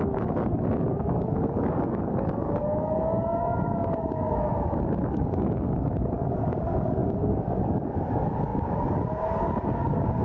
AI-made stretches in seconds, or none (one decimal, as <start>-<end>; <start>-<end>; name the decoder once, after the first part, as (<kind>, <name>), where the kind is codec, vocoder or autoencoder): 0.0-10.2 (codec, DAC)